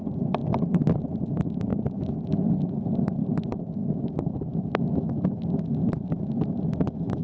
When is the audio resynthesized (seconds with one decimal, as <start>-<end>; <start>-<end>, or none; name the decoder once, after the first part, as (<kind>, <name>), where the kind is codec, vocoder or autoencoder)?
3.8-5.6 (autoencoder, DAC-VAE)